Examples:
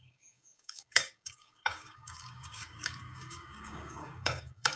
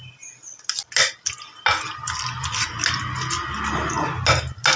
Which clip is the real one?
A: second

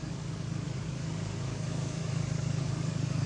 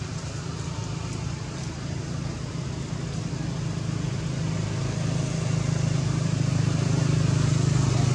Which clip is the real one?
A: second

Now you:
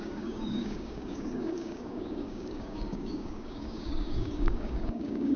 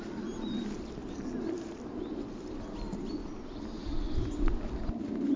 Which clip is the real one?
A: second